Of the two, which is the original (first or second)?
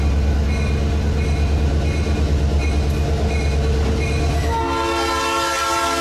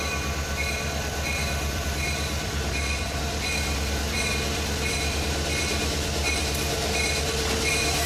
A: first